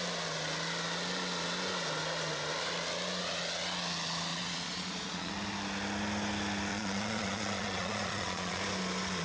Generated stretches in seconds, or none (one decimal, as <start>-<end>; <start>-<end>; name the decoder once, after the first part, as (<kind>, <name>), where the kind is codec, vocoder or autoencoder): 4.3-5.3 (vocoder, Vocos); 6.7-8.6